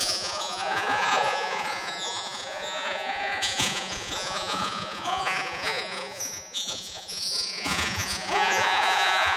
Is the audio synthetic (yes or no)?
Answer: yes